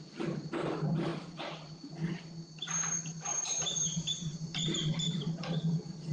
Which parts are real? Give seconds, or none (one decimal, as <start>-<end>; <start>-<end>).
0.0-6.1